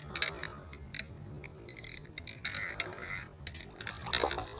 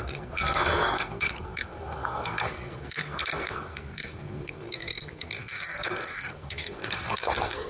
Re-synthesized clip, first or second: second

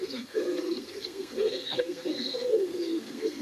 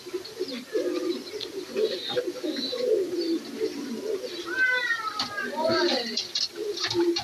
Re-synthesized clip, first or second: first